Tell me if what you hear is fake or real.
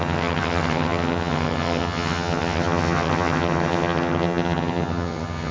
fake